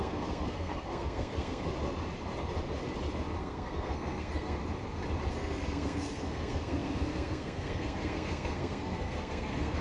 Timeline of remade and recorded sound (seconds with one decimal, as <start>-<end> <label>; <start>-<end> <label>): 0.0-1.7 remade; 1.7-3.4 recorded; 3.4-4.6 remade; 4.6-5.3 recorded; 5.3-9.8 remade